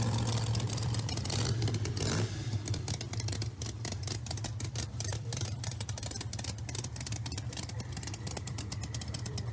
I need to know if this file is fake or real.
fake